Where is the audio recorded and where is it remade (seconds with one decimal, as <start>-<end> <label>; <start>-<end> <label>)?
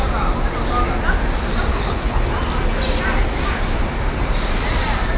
0.0-1.7 recorded; 1.7-2.3 remade; 2.3-5.2 recorded